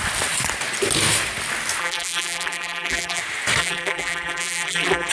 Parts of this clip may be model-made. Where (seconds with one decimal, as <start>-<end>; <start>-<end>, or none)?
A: 1.8-3.2; 3.6-5.1